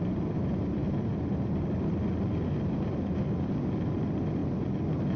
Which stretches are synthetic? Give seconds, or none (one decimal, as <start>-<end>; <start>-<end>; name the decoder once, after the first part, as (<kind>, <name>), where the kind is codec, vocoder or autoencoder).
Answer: 0.0-4.4 (vocoder, BigVGAN v2)